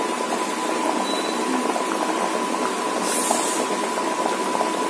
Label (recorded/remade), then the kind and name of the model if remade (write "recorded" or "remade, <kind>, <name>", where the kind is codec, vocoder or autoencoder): recorded